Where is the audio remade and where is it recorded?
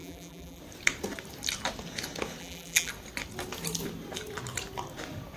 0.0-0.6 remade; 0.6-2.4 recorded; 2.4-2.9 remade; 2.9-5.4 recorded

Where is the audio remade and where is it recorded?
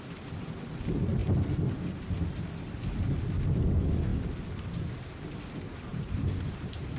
0.0-5.9 recorded; 5.9-7.0 remade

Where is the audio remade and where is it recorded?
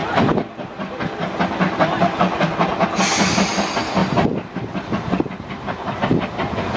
0.0-6.8 recorded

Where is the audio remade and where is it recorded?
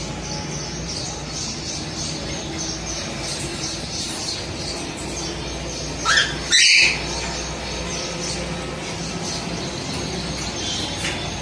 0.0-3.5 recorded; 3.5-5.2 remade; 5.2-11.4 recorded